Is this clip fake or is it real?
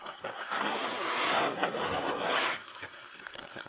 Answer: fake